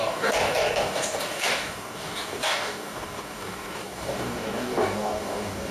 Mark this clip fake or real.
fake